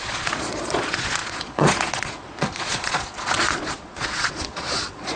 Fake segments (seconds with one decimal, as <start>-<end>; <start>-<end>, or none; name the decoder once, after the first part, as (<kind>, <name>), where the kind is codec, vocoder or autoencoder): 0.0-5.2 (vocoder, Vocos)